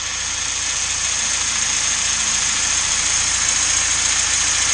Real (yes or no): yes